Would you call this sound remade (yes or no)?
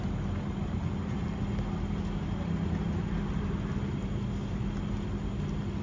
no